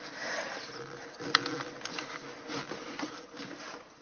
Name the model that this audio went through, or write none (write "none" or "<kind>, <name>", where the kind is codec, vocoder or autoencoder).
none